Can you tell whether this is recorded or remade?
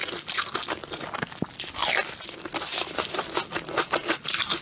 recorded